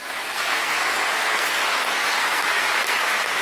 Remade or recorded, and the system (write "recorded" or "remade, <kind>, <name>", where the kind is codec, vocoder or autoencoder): remade, codec, SNAC